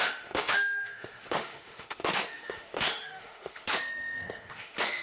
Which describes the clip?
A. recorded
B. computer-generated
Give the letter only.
B